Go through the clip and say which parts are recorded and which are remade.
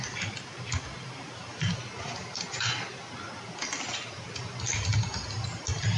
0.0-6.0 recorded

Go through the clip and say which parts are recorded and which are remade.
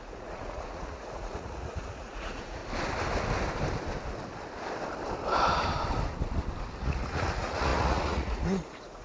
0.0-2.6 remade; 2.6-6.6 recorded; 6.6-9.0 remade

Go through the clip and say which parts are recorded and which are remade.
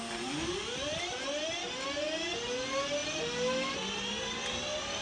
0.0-5.0 recorded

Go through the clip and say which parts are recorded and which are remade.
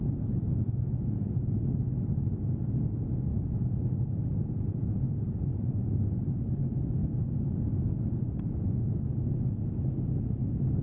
0.0-1.6 remade; 1.6-3.3 recorded; 3.3-5.9 remade; 5.9-7.0 recorded; 7.0-9.0 remade; 9.0-10.8 recorded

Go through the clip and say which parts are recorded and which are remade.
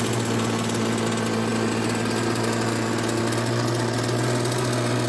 0.0-5.1 recorded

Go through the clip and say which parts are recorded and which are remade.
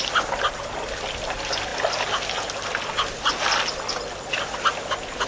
0.0-5.3 recorded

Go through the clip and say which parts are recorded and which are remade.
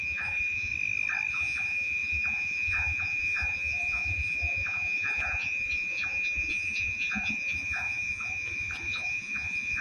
0.0-0.7 remade; 0.7-1.3 recorded; 1.3-9.8 remade